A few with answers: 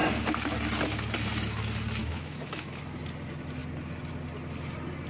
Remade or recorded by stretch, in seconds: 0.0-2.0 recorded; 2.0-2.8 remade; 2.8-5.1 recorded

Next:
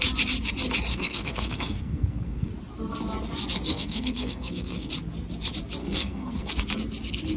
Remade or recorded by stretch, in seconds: 0.0-0.9 recorded; 0.9-2.5 remade; 2.5-3.7 recorded; 3.7-4.9 remade; 4.9-5.8 recorded; 5.8-6.5 remade; 6.5-7.4 recorded

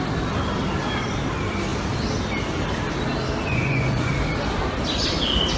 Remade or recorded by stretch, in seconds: 0.0-3.4 recorded; 3.4-4.1 remade; 4.1-5.6 recorded

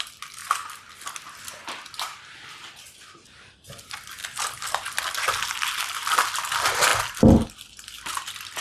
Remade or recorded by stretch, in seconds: 0.0-8.6 recorded

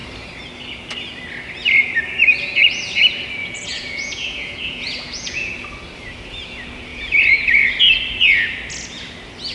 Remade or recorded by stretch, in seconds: 0.0-3.4 recorded; 3.4-5.5 remade; 5.5-6.9 recorded; 6.9-7.7 remade; 7.7-9.5 recorded